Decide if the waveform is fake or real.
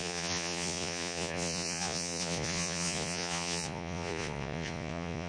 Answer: fake